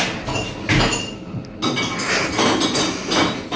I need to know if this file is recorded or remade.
recorded